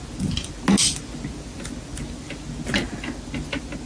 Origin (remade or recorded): recorded